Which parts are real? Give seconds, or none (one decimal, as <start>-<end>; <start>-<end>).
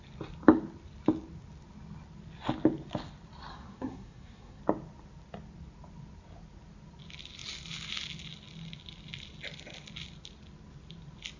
0.0-3.5; 4.6-11.4